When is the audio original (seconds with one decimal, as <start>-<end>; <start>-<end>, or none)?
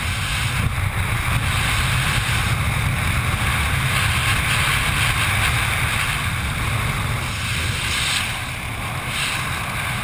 0.0-10.0